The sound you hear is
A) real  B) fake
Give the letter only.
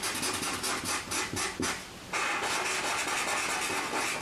A